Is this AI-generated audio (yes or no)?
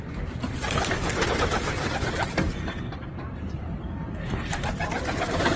no